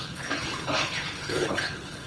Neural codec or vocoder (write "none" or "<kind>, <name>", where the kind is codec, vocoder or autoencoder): codec, HILCodec